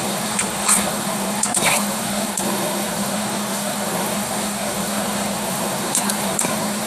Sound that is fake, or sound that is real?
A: fake